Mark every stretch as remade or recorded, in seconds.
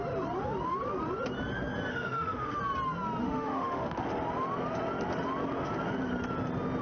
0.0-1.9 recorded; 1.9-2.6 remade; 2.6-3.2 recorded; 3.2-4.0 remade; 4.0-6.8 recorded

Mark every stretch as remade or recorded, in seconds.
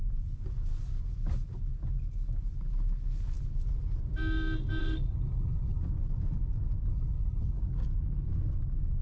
0.0-4.8 recorded; 4.8-5.8 remade; 5.8-6.9 recorded; 6.9-7.6 remade; 7.6-9.0 recorded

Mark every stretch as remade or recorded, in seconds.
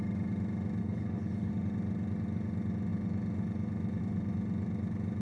0.0-0.8 recorded; 0.8-1.5 remade; 1.5-5.2 recorded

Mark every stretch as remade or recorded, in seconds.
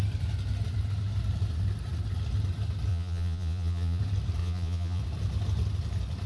0.0-2.9 recorded; 2.9-4.0 remade; 4.0-4.4 recorded; 4.4-5.0 remade; 5.0-6.3 recorded